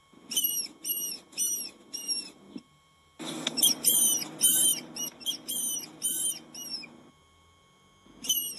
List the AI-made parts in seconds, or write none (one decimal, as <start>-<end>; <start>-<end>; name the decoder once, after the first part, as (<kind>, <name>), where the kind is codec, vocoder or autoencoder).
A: none

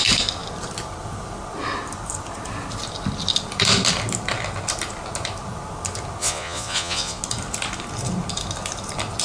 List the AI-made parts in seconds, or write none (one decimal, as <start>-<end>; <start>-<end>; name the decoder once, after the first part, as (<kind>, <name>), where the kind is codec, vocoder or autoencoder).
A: 6.2-7.2 (vocoder, Vocos)

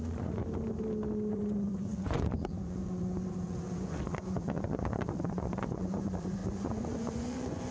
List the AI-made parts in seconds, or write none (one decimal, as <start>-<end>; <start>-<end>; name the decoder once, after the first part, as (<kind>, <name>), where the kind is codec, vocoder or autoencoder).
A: 0.0-0.4 (vocoder, Vocos); 1.3-7.7

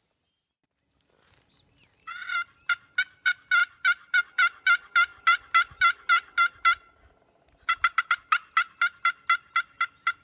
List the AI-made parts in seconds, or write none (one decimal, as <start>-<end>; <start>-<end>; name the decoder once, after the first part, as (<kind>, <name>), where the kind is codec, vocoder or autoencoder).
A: none